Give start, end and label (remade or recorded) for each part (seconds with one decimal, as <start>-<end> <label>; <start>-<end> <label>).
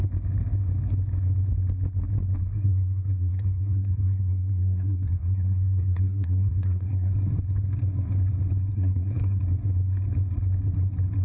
0.0-2.4 recorded; 2.4-7.1 remade; 7.1-8.7 recorded; 8.7-9.4 remade; 9.4-11.2 recorded